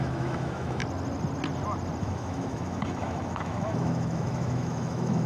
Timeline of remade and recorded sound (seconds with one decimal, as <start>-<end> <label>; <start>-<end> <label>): 0.0-0.8 remade; 0.8-2.0 recorded; 2.0-5.3 remade

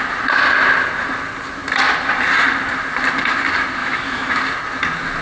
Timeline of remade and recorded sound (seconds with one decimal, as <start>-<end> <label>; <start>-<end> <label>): 0.0-3.8 recorded; 3.8-4.4 remade; 4.4-5.2 recorded

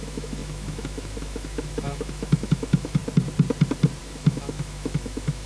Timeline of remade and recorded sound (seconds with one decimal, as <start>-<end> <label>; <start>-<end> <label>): 0.0-3.0 remade; 3.0-4.0 recorded; 4.0-5.5 remade

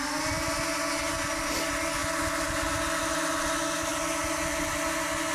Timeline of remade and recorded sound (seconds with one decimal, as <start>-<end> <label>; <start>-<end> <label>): 0.0-5.3 recorded

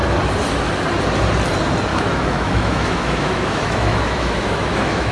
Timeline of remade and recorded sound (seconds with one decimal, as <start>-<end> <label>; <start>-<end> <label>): 0.0-1.9 recorded; 1.9-5.1 remade